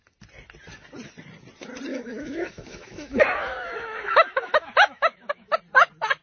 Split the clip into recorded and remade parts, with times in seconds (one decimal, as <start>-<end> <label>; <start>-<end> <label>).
0.0-1.9 recorded; 1.9-5.6 remade; 5.6-6.2 recorded